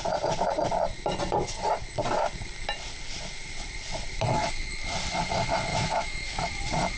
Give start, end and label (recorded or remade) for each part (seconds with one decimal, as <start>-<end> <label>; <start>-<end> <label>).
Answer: 0.0-5.7 recorded; 5.7-6.5 remade; 6.5-7.0 recorded

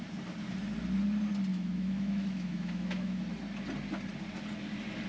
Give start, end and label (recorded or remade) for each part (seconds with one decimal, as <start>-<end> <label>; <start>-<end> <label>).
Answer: 0.0-1.5 recorded; 1.5-3.2 remade; 3.2-5.1 recorded

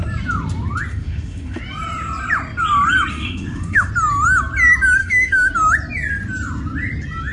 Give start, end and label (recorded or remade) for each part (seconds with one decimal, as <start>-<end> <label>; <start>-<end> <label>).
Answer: 0.0-0.9 recorded; 0.9-1.6 remade; 1.6-3.1 recorded; 3.1-3.9 remade; 3.9-5.0 recorded; 5.0-5.5 remade; 5.5-7.3 recorded

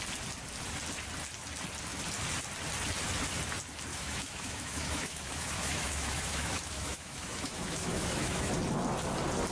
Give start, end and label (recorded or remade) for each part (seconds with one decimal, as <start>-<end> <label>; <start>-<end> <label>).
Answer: 0.0-3.9 recorded; 3.9-8.5 remade; 8.5-9.5 recorded

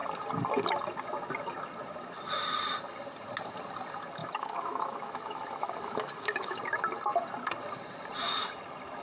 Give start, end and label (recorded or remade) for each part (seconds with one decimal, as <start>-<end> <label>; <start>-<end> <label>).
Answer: 0.0-4.2 recorded; 4.2-6.6 remade; 6.6-9.0 recorded

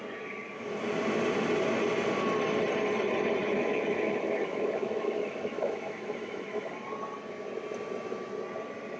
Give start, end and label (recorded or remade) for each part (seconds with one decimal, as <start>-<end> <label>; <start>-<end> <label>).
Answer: 0.0-3.4 recorded; 3.4-6.7 remade; 6.7-9.0 recorded

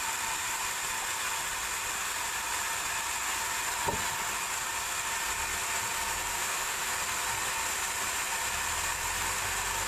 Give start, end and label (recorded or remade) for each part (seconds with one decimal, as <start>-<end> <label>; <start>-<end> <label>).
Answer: 0.0-6.3 recorded; 6.3-6.9 remade; 6.9-9.9 recorded